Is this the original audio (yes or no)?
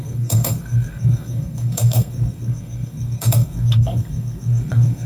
no